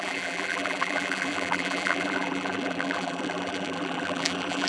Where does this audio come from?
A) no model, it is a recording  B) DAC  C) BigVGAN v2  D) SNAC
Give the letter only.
C